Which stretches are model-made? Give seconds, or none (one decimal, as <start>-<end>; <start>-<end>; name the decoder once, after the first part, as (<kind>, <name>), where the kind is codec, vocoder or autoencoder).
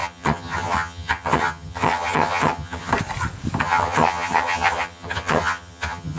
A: 0.0-2.9 (vocoder, HiFi-GAN); 3.6-6.2